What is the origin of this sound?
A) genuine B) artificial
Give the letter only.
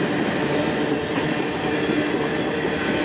A